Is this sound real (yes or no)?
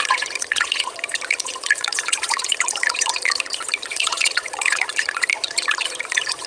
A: no